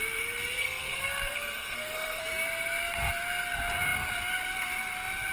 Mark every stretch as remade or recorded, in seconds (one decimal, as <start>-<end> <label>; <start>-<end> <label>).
0.0-0.6 recorded; 0.6-2.2 remade; 2.2-5.3 recorded